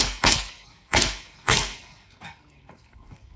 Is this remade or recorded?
remade